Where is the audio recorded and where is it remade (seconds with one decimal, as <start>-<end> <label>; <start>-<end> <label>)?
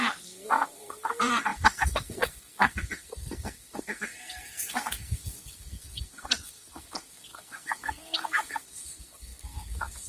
0.0-10.1 remade